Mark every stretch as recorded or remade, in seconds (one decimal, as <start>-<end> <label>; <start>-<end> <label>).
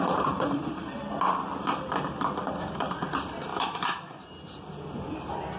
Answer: 0.0-3.5 recorded; 3.5-4.2 remade; 4.2-5.6 recorded